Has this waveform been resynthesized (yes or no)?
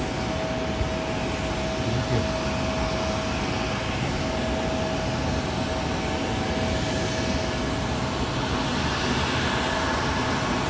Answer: no